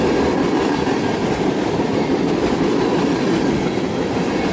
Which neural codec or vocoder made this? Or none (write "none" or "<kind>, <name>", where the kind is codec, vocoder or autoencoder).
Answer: none